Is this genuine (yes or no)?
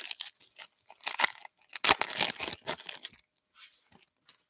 yes